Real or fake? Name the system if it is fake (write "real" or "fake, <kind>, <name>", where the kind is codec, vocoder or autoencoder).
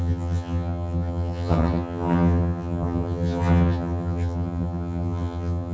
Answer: fake, vocoder, HiFi-GAN